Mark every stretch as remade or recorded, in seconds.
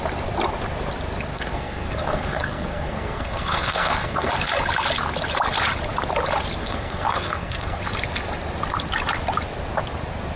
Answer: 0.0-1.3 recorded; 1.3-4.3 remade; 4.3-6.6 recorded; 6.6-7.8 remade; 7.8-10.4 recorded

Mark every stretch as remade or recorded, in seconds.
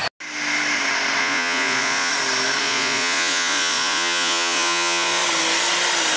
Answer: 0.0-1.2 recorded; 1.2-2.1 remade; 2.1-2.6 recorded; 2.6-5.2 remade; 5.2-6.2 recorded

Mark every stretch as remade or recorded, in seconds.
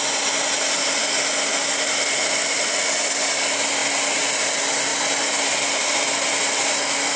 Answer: 0.0-7.2 recorded